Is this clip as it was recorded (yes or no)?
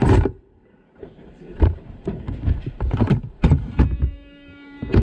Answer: no